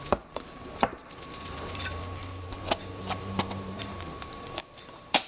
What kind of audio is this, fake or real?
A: fake